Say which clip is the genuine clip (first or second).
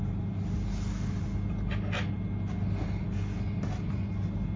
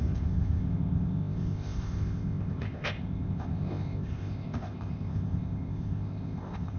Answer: first